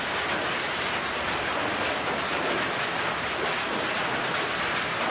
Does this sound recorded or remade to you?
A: recorded